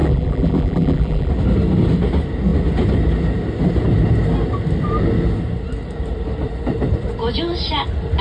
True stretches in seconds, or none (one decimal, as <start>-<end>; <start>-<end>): 1.3-8.2